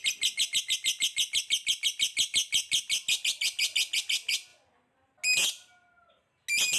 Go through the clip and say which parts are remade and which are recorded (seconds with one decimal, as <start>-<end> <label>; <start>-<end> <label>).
0.0-6.8 recorded